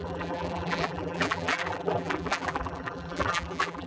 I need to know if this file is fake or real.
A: fake